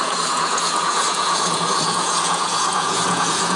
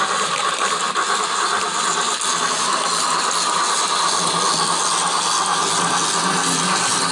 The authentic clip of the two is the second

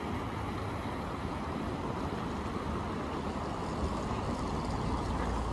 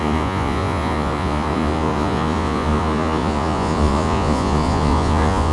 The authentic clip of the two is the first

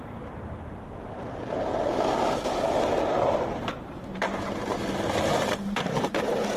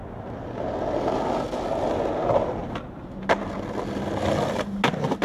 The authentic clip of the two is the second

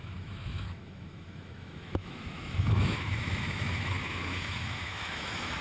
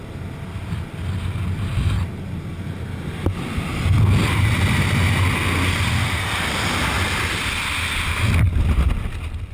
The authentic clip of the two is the second